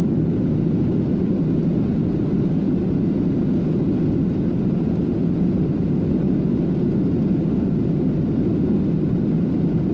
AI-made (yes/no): no